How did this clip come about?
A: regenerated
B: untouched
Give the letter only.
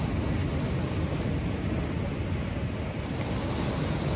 B